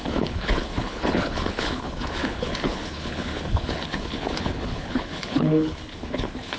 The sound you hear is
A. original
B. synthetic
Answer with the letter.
B